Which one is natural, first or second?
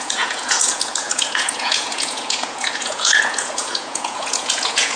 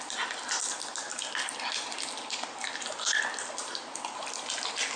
second